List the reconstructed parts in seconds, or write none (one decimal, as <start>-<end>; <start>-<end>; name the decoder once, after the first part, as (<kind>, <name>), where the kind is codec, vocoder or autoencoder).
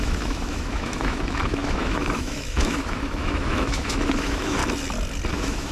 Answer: 0.0-4.6 (autoencoder, DAC-VAE); 5.3-5.7